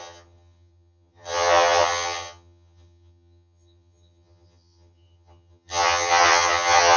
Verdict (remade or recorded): remade